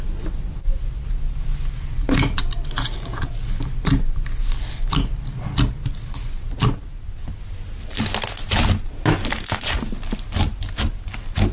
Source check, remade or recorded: recorded